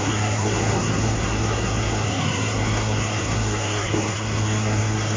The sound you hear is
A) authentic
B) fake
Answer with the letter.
B